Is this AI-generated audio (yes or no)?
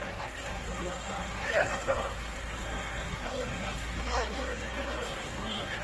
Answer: yes